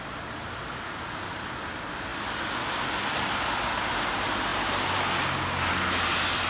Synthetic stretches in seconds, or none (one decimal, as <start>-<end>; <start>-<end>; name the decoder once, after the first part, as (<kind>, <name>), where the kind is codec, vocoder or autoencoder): none